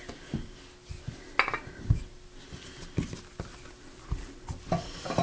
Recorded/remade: recorded